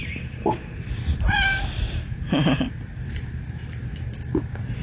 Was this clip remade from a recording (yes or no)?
yes